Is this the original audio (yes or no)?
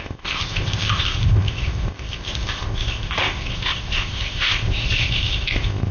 no